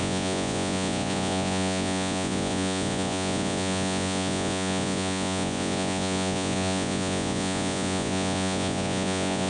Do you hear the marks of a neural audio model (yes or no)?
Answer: yes